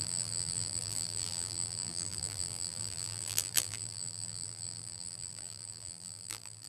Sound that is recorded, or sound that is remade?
remade